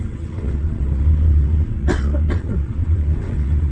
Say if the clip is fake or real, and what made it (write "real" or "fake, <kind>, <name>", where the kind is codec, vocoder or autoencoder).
fake, vocoder, WaveNeXt